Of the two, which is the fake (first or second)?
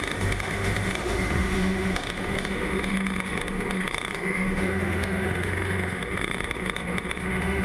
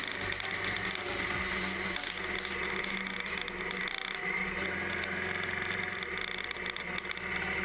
first